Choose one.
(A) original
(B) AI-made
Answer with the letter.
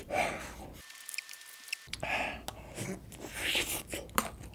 A